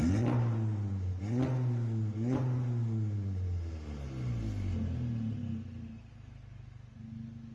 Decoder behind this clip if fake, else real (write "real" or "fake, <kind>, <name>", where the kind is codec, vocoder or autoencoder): real